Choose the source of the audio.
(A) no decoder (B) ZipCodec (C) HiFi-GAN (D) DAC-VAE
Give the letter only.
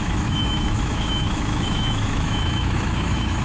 D